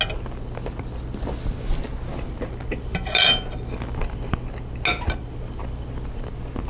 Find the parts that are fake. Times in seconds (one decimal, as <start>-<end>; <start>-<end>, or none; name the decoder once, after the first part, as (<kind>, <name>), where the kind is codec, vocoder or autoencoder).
none